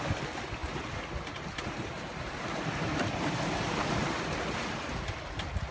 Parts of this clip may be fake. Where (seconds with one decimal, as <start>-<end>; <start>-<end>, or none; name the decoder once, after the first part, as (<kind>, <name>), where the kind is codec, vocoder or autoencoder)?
0.6-4.0 (vocoder, BigVGAN v2)